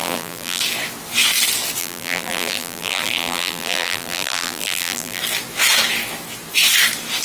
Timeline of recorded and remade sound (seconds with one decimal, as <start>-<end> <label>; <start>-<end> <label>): 0.0-0.6 remade; 0.6-1.8 recorded; 1.8-5.2 remade; 5.2-7.2 recorded